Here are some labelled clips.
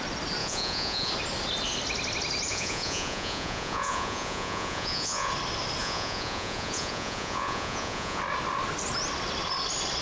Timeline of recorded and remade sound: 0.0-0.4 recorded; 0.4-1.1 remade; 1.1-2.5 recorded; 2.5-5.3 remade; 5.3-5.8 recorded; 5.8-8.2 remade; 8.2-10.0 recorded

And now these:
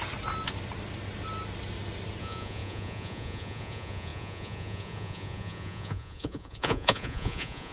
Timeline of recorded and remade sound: 0.0-2.2 recorded; 2.2-7.7 remade

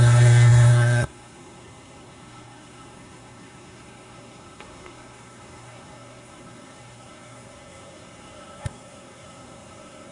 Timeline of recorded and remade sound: 0.0-10.1 remade

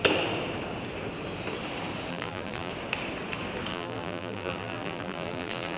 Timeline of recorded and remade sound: 0.0-2.1 recorded; 2.1-2.7 remade; 2.7-3.7 recorded; 3.7-5.8 remade